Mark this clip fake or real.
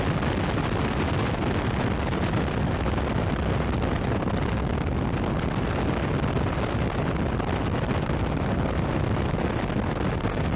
real